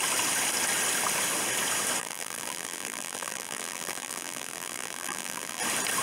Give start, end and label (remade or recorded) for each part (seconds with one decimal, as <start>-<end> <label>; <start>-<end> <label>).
0.0-2.0 recorded; 2.0-5.6 remade; 5.6-6.0 recorded